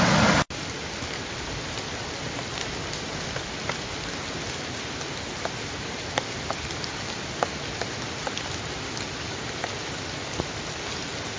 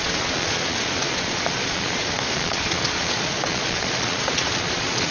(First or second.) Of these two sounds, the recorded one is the first